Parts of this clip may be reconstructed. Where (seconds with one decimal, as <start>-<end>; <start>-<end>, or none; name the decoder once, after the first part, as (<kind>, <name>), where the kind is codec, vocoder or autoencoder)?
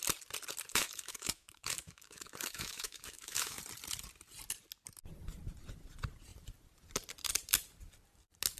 0.7-3.6 (autoencoder, DAC-VAE)